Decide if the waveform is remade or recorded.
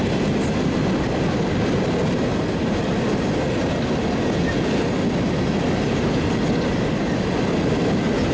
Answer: recorded